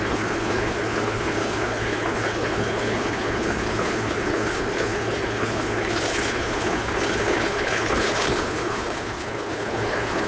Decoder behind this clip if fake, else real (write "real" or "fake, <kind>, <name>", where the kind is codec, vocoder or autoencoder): fake, codec, HILCodec